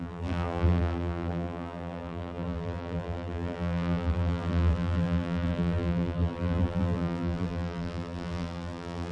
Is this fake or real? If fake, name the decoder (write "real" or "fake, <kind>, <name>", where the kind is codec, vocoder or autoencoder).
fake, vocoder, BigVGAN v2